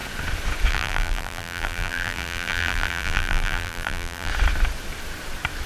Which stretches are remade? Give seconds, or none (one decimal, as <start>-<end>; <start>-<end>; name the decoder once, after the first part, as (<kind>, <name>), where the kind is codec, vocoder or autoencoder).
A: 0.7-4.3 (vocoder, BigVGAN v2)